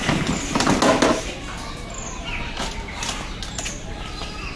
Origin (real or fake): real